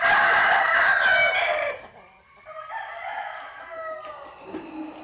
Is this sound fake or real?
real